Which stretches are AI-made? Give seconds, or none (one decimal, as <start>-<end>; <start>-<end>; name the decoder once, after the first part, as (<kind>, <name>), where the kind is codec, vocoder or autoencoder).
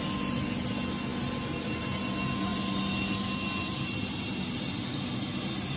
none